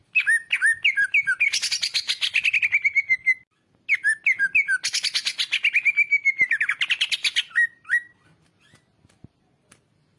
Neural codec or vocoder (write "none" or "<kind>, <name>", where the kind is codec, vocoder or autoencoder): none